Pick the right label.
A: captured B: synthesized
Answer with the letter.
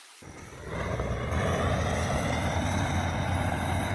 A